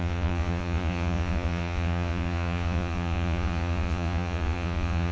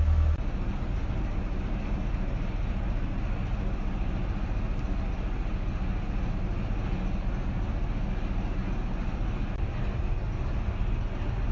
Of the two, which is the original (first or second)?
second